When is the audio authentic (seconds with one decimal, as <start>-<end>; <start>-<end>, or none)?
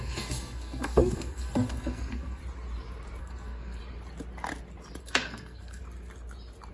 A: 2.4-3.2; 3.8-5.0; 5.8-6.7